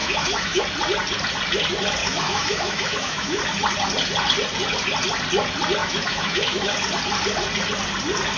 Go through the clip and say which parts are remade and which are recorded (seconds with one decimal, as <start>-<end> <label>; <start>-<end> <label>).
0.0-0.6 remade; 0.6-2.0 recorded; 2.0-3.4 remade; 3.4-5.8 recorded; 5.8-6.7 remade; 6.7-8.4 recorded